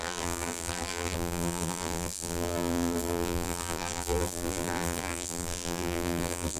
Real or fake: fake